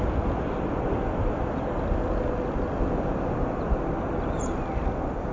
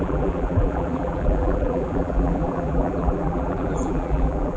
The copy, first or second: second